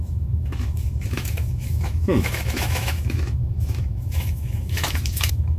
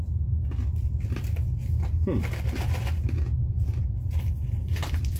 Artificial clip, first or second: first